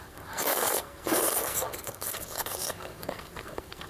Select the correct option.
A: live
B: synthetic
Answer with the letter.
B